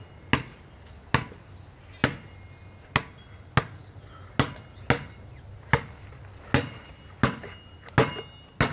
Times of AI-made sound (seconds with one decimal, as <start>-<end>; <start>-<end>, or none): none